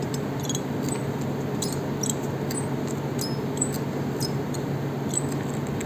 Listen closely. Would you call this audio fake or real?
real